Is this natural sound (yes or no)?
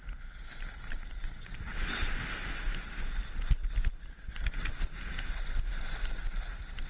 yes